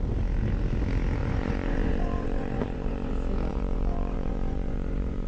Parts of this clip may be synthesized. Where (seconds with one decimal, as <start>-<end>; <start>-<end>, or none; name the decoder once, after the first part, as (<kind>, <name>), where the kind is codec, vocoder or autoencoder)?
1.2-3.1 (vocoder, Vocos); 3.5-5.3